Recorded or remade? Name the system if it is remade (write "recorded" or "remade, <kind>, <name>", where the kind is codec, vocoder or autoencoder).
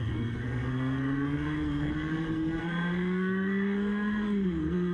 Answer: remade, codec, SNAC